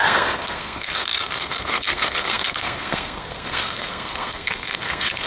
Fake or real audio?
fake